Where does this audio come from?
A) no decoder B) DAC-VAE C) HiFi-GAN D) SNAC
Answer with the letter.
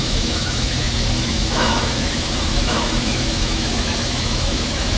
B